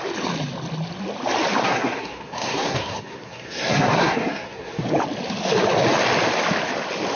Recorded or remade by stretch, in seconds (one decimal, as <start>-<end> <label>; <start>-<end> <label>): 0.0-1.6 recorded; 1.6-4.8 remade; 4.8-7.2 recorded

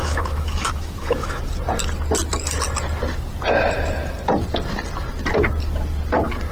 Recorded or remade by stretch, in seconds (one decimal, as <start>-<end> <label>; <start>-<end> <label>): 0.0-1.4 remade; 1.4-6.5 recorded

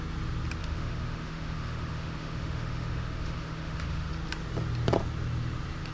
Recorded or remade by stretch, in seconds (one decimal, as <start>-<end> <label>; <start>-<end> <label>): 0.0-0.6 recorded; 0.6-4.1 remade; 4.1-5.9 recorded